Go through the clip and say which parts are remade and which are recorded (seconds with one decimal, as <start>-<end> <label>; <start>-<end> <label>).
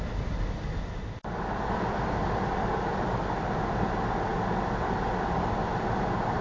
0.0-0.7 recorded; 0.7-2.7 remade; 2.7-6.4 recorded